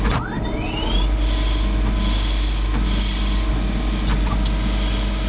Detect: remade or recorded recorded